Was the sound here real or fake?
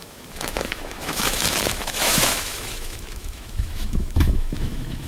fake